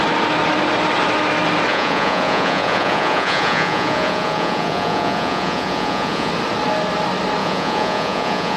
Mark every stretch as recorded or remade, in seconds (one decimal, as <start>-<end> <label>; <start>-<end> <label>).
0.0-1.7 recorded; 1.7-6.3 remade; 6.3-7.4 recorded; 7.4-8.6 remade